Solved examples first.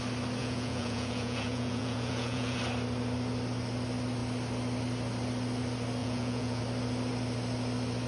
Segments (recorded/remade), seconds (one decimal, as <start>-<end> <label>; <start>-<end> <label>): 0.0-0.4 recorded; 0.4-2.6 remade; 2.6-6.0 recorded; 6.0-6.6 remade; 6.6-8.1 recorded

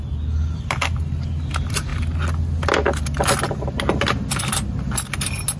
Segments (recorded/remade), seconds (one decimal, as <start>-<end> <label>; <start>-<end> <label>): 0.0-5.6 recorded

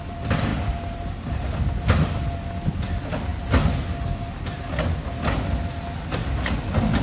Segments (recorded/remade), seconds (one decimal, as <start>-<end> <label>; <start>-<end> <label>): 0.0-7.0 recorded

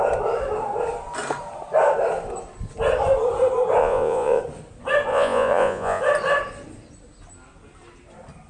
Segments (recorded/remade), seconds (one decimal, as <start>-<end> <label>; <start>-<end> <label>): 0.0-3.8 recorded; 3.8-4.4 remade; 4.4-5.1 recorded; 5.1-6.0 remade; 6.0-8.5 recorded